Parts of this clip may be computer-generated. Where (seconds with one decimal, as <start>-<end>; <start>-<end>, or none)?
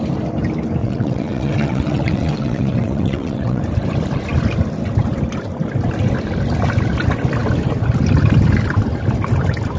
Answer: 0.8-3.6